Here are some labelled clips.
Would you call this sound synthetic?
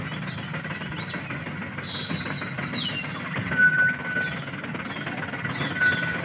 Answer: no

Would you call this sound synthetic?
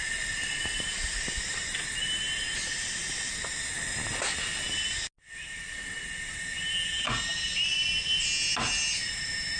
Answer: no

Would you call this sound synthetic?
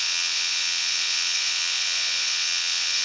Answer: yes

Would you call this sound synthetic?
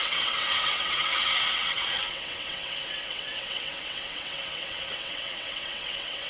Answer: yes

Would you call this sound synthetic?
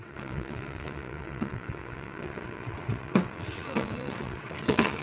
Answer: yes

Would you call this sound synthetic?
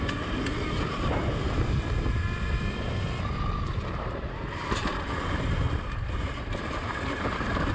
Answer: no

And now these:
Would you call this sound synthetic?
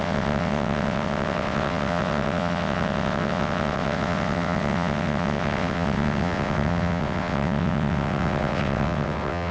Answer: yes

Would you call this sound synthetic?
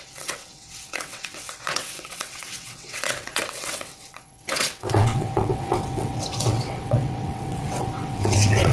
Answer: yes